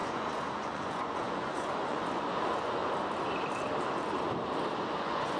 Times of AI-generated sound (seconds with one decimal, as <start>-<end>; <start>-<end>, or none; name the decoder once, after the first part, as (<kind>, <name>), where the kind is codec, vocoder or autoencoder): 0.0-2.8 (vocoder, Vocos); 5.0-5.4